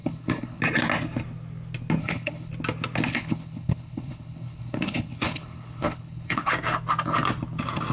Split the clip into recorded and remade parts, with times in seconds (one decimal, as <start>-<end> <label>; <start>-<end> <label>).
0.0-0.6 remade; 0.6-2.0 recorded; 2.0-2.5 remade; 2.5-3.1 recorded; 3.1-6.5 remade; 6.5-7.9 recorded

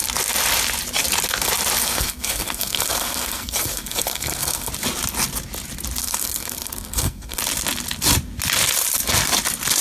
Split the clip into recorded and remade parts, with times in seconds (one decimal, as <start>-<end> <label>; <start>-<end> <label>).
0.0-1.8 recorded; 1.8-4.7 remade; 4.7-6.0 recorded; 6.0-7.4 remade; 7.4-9.8 recorded